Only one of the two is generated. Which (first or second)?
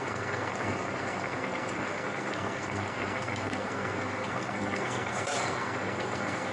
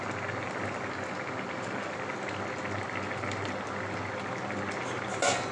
first